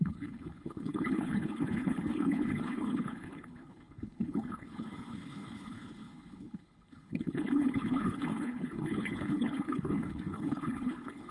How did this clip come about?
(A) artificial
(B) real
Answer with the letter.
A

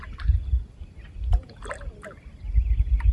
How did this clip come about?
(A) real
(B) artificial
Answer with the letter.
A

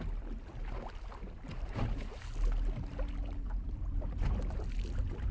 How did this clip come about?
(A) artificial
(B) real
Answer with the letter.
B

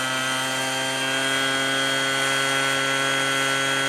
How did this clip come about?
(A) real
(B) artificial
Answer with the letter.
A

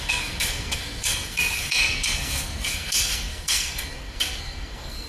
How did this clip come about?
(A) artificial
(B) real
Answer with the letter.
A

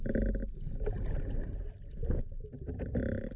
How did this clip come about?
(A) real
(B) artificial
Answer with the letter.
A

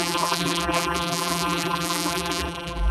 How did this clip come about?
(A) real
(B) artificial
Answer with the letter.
B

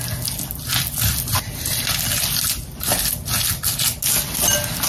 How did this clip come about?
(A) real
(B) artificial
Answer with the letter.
A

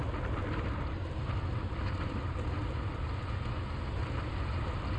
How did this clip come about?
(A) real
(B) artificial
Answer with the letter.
A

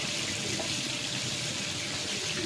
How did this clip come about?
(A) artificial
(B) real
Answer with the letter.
B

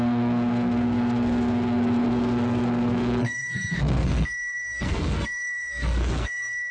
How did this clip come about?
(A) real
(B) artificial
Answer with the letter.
B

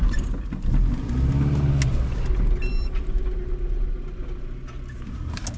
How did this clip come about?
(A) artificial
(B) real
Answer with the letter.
B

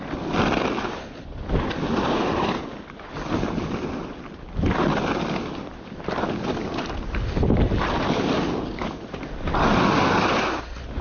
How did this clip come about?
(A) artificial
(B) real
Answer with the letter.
B